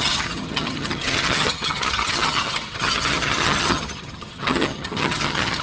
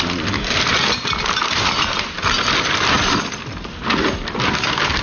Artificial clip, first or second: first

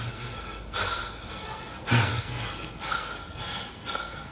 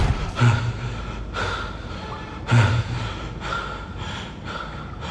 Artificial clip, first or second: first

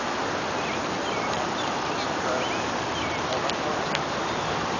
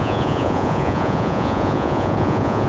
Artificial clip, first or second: second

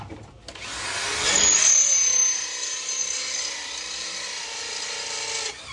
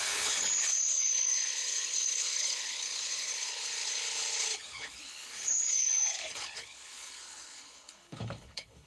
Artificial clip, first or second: second